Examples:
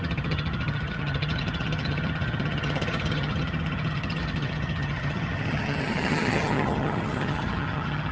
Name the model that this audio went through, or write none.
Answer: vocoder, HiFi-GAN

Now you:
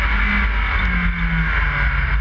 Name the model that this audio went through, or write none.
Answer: none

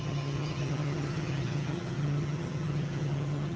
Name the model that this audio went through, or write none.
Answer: vocoder, HiFi-GAN